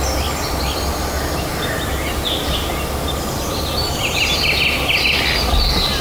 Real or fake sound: real